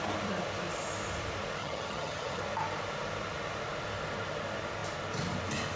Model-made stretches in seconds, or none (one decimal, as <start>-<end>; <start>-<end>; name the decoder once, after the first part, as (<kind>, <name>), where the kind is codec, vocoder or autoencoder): 1.6-2.4 (vocoder, HiFi-GAN)